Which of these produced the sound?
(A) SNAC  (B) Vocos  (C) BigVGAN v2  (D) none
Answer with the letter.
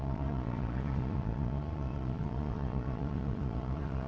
B